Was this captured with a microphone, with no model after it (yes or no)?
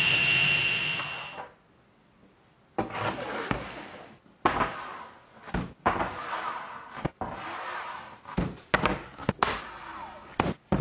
yes